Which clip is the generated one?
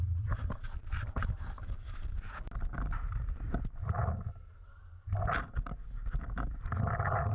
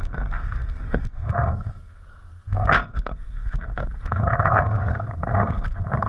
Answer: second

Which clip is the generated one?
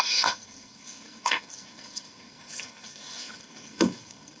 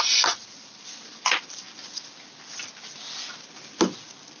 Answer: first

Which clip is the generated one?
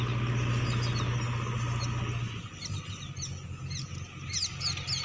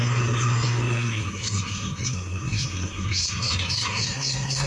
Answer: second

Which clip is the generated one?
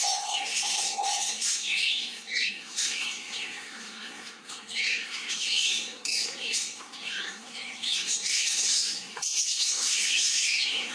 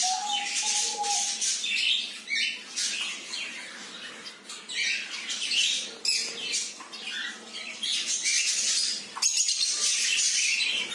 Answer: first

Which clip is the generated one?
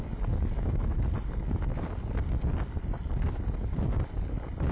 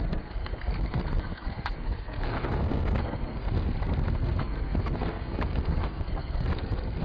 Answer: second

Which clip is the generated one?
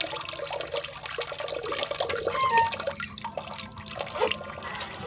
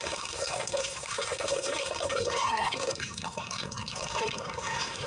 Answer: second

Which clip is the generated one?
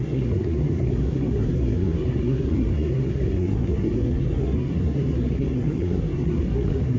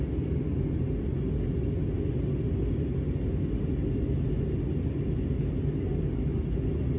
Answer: first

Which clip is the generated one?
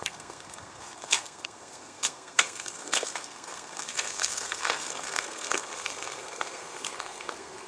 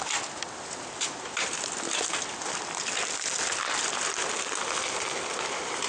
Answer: first